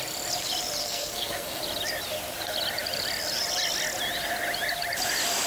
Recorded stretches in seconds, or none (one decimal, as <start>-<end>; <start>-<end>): 0.0-0.8; 1.6-5.5